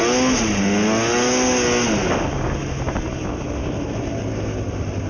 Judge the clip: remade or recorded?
recorded